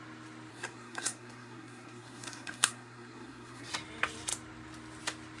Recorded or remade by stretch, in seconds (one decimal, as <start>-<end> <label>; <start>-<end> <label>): 0.0-0.5 recorded; 0.5-3.7 remade; 3.7-5.4 recorded